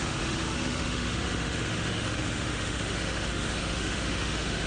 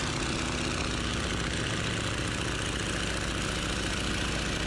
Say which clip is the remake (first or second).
first